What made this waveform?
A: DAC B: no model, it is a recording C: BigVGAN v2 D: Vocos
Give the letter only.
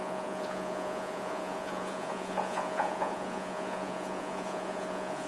D